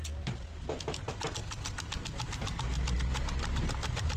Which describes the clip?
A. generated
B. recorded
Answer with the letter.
B